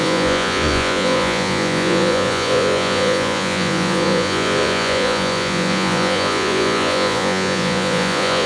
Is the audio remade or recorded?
remade